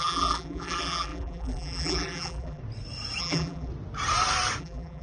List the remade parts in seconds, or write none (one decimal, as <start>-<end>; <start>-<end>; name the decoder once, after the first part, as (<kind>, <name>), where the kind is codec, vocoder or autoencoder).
0.0-2.6 (vocoder, BigVGAN v2); 3.2-3.7; 4.6-5.0